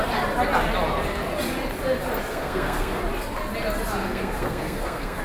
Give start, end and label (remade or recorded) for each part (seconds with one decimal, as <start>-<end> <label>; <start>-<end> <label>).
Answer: 0.0-2.3 recorded; 2.3-3.0 remade; 3.0-4.0 recorded; 4.0-5.2 remade